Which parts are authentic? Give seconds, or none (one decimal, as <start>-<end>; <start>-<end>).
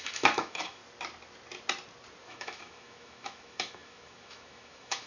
0.8-2.2